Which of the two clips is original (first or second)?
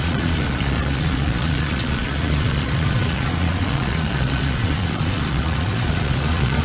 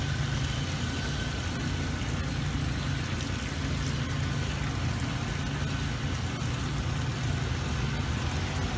second